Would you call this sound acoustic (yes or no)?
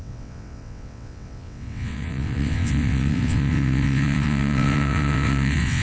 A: no